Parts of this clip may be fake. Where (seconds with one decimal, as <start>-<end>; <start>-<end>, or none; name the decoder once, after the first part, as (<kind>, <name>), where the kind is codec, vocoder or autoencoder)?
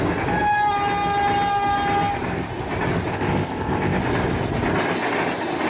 3.1-4.0 (codec, ZipCodec)